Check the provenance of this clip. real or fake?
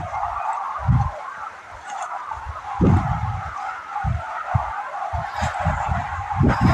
fake